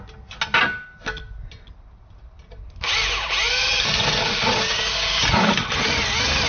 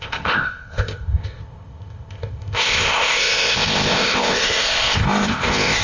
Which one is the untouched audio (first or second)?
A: first